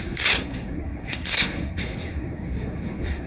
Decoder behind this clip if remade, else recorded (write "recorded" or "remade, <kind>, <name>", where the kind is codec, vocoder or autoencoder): remade, codec, SNAC